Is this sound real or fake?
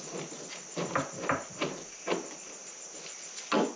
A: real